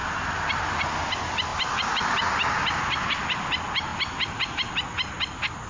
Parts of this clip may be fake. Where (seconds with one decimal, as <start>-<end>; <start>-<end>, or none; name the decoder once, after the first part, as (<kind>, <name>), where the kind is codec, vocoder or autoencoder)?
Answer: none